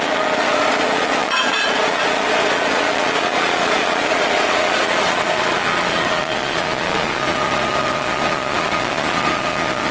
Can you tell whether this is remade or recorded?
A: remade